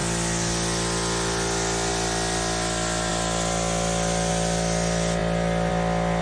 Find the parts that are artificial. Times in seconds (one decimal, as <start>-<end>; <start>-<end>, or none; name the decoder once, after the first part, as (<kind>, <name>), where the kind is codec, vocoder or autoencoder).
none